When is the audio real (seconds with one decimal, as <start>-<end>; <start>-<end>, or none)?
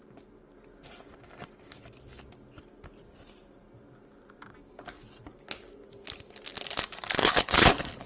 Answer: 0.0-7.2